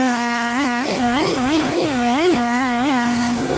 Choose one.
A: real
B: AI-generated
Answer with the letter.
B